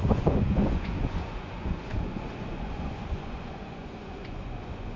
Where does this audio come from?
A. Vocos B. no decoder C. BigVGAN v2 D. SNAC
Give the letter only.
A